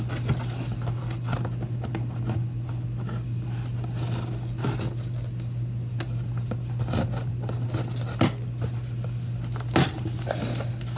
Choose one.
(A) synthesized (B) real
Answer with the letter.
B